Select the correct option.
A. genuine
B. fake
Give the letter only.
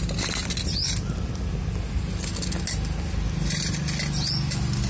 A